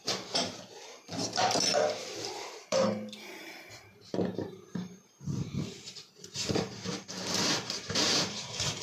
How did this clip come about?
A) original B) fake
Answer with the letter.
B